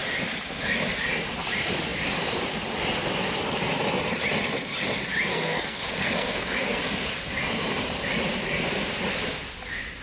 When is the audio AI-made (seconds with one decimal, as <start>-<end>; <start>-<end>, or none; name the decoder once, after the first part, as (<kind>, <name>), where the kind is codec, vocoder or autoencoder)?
5.3-6.8 (codec, SNAC)